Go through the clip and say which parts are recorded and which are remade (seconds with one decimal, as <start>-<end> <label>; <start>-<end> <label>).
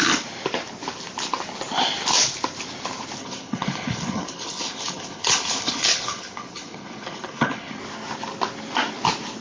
0.0-3.2 recorded; 3.2-7.8 remade; 7.8-9.4 recorded